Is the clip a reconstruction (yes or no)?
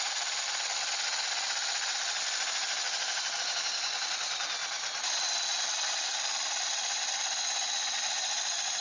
no